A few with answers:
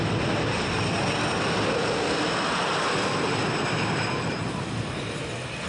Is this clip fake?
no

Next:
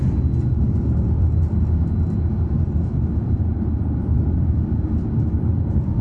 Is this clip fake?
no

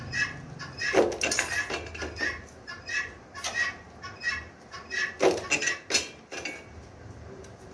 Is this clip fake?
no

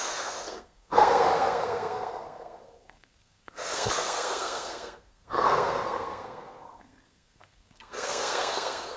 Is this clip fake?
yes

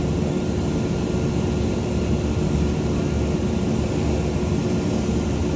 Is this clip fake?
no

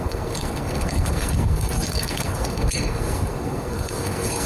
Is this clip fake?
yes